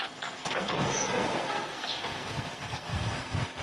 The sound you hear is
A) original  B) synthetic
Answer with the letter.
B